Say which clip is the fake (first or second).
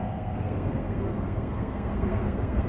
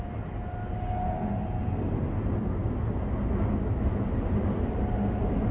first